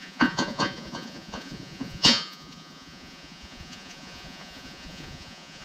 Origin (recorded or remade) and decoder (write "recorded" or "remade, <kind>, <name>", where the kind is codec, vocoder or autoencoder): remade, vocoder, Vocos